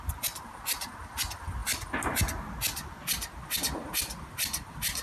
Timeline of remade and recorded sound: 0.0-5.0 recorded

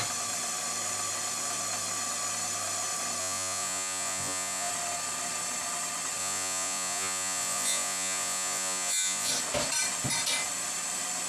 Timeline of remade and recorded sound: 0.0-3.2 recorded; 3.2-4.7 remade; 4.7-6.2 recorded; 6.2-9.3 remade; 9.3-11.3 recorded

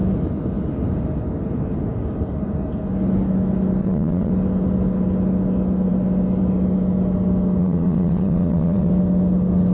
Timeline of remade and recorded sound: 0.0-3.8 recorded; 3.8-4.3 remade; 4.3-7.6 recorded; 7.6-8.9 remade; 8.9-9.7 recorded

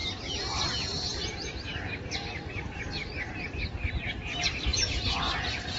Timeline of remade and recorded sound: 0.0-5.8 recorded